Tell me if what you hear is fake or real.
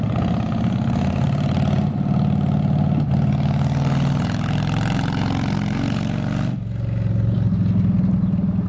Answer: real